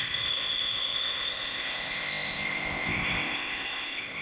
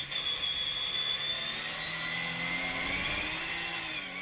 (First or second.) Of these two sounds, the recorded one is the second